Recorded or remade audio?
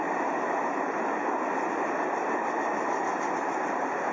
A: recorded